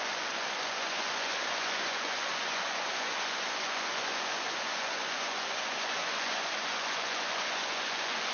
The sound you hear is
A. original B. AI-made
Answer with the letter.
B